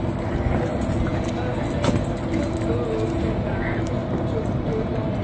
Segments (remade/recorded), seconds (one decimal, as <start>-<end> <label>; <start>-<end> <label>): 0.0-5.2 recorded